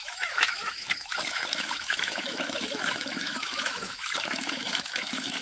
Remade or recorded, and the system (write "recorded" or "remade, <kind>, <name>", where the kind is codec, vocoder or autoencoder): remade, autoencoder, DAC-VAE